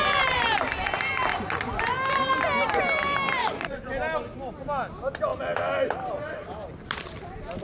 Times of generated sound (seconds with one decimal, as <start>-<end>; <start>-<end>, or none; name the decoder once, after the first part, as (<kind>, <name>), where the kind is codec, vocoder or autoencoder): 1.3-1.8 (vocoder, Vocos); 3.4-3.9